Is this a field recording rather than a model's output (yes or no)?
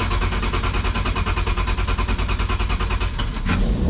yes